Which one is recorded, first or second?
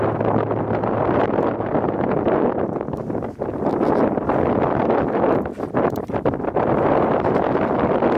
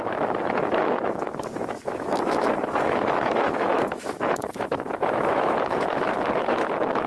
first